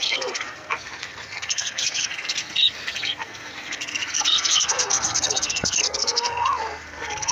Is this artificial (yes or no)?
yes